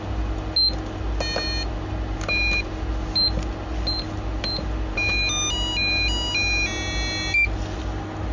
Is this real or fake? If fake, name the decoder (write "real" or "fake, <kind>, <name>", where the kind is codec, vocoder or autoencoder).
real